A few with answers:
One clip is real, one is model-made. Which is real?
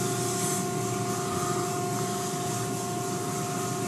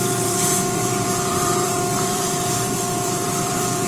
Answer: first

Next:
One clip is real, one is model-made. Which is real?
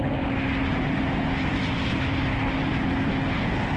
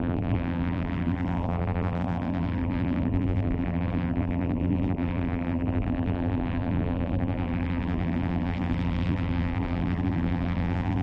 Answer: first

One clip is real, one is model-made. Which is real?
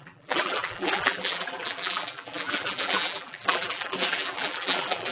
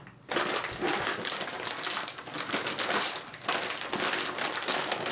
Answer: second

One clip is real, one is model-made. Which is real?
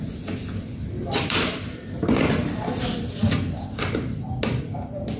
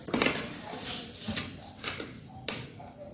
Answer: first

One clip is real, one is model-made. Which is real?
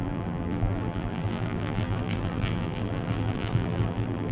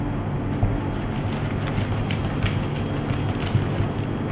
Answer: second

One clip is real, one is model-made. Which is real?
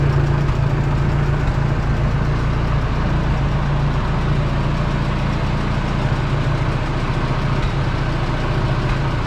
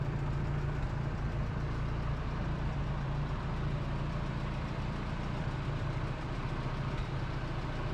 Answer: first